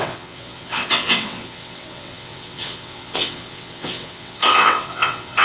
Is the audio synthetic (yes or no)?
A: yes